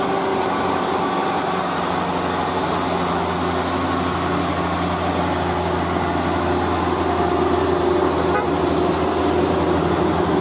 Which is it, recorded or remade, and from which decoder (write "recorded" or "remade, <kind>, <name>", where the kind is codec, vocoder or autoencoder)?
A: recorded